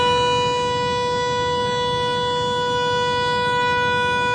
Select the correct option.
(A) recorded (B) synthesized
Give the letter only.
A